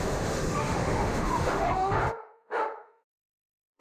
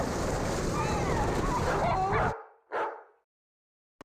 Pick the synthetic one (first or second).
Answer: first